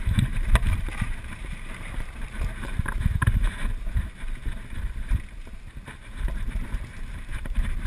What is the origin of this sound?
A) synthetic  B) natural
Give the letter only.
A